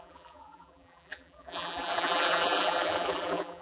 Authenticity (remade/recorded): remade